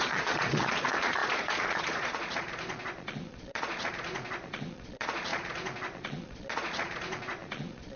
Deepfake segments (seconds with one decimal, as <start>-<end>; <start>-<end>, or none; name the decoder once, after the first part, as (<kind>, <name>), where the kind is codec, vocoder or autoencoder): 0.0-8.0 (vocoder, Vocos)